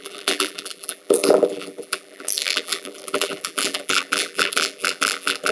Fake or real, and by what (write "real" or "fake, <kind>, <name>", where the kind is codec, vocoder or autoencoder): fake, vocoder, BigVGAN v2